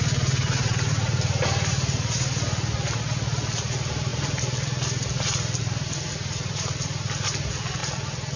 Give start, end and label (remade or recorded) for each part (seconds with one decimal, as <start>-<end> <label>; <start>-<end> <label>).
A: 0.0-8.4 recorded